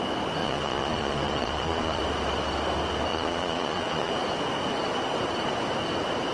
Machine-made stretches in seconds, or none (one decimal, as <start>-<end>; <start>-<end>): 0.4-2.0; 3.1-4.1

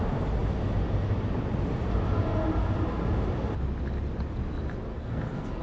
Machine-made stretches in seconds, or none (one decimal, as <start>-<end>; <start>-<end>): 4.9-5.6

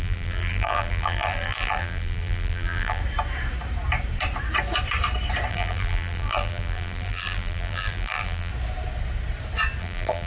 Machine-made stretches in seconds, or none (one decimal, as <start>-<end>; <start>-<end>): 0.0-3.0; 5.5-8.5; 9.8-10.3

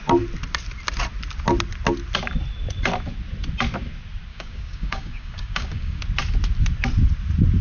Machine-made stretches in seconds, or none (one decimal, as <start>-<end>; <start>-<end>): 4.3-6.0

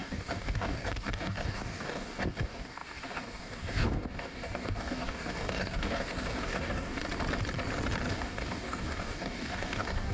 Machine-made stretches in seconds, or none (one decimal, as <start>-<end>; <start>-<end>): 0.0-7.0; 8.1-10.1

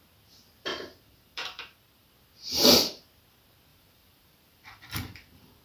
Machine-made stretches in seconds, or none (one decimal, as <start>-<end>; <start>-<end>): 0.7-2.1; 3.7-5.6

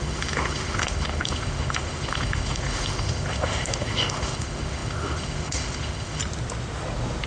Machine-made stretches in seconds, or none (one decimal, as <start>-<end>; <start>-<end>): 0.0-6.2